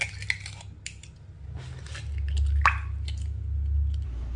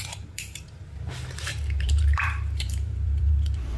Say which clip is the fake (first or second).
second